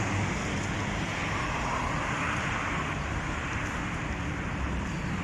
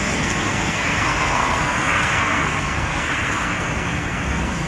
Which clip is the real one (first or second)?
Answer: first